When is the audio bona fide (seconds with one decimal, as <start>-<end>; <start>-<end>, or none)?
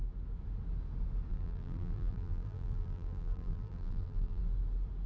0.0-1.3; 4.4-5.1